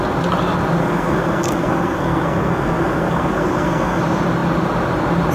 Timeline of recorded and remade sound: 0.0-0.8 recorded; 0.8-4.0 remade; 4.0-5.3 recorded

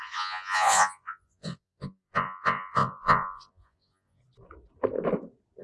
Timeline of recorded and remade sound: 0.0-4.2 remade; 4.2-5.6 recorded